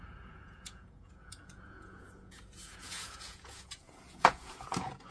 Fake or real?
fake